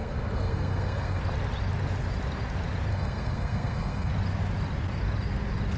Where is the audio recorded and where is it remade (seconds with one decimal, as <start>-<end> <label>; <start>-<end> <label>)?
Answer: 0.0-1.2 remade; 1.2-2.9 recorded; 2.9-4.1 remade; 4.1-5.8 recorded